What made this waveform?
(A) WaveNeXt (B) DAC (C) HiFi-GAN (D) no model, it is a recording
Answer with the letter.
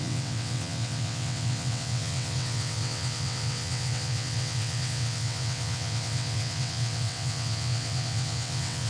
A